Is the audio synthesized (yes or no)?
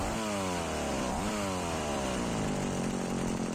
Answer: no